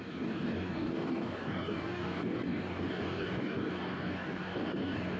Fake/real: fake